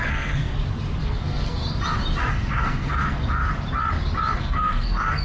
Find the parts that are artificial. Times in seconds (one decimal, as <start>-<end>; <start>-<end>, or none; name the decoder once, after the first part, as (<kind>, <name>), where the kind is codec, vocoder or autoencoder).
0.0-0.5 (codec, SNAC); 1.0-1.6; 2.2-3.4; 4.4-5.2